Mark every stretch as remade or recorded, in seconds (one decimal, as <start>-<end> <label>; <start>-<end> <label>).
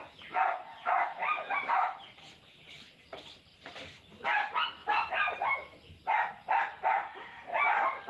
0.0-8.1 recorded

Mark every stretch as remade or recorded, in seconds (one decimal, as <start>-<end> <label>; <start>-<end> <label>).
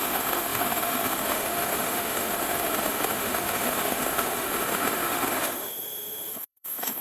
0.0-7.0 remade